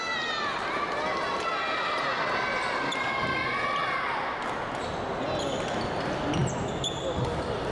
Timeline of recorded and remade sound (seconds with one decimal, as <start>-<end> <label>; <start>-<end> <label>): 0.0-7.7 recorded